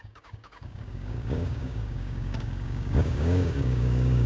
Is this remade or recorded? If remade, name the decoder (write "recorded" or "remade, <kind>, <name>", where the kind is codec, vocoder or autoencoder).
remade, codec, DAC